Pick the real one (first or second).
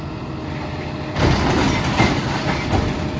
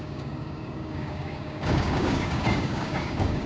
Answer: first